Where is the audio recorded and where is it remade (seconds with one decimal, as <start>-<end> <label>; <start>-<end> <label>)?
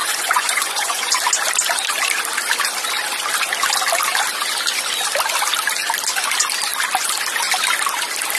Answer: 0.0-1.1 remade; 1.1-8.4 recorded